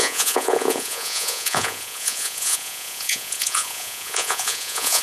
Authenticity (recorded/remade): remade